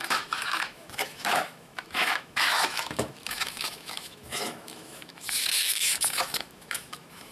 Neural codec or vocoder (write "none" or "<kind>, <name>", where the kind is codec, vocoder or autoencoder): autoencoder, DAC-VAE